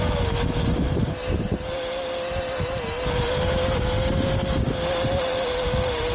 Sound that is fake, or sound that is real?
real